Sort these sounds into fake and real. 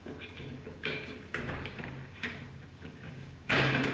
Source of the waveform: fake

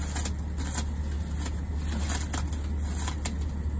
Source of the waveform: real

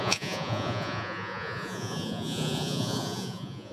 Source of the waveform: fake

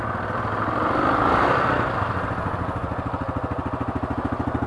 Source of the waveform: real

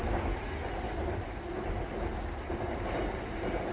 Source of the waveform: real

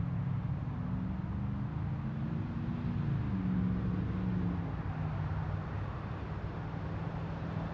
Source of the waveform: real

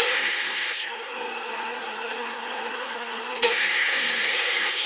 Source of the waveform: fake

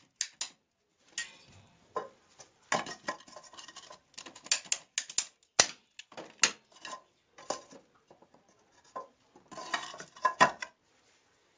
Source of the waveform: real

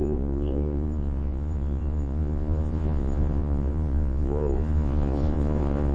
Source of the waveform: fake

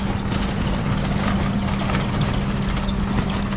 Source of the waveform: real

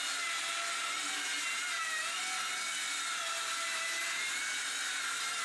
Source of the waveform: real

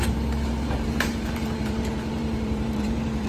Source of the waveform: fake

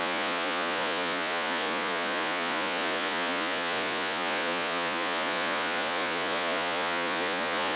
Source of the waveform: fake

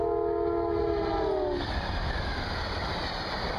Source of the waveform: real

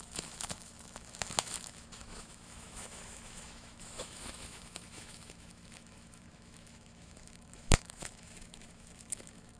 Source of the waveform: fake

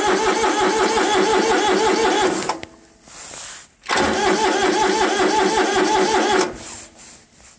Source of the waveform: real